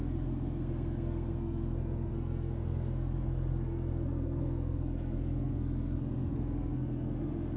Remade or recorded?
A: remade